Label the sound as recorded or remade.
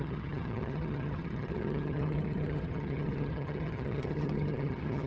remade